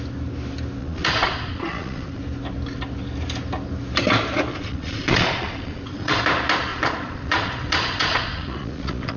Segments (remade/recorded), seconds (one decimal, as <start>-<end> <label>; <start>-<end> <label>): 0.0-0.8 recorded; 0.8-2.2 remade; 2.2-4.5 recorded; 4.5-6.2 remade; 6.2-6.7 recorded; 6.7-9.2 remade